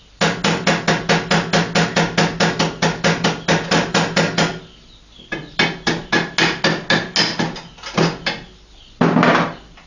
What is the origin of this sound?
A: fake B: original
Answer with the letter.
B